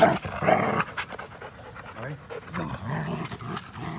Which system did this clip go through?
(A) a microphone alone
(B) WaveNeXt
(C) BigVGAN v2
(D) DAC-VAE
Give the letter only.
A